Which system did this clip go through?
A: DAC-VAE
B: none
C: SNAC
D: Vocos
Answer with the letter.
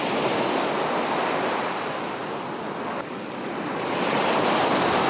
B